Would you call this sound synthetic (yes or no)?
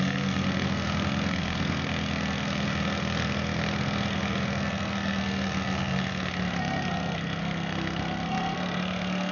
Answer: yes